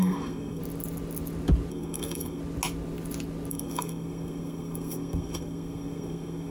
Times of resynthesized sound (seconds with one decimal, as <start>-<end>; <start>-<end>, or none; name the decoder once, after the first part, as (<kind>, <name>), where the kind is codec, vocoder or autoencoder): 0.0-0.6 (codec, SNAC); 1.7-2.4; 3.5-6.5